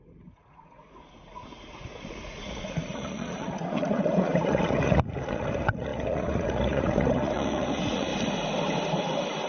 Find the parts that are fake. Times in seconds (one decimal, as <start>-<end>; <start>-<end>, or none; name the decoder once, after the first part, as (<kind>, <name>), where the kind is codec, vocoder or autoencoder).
0.0-8.1 (vocoder, Vocos)